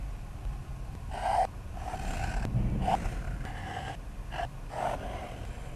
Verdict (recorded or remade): recorded